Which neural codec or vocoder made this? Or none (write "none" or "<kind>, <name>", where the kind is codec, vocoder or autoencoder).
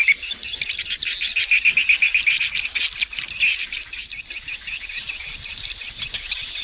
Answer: none